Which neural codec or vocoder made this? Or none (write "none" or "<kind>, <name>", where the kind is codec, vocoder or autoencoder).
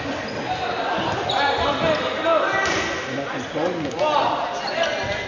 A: none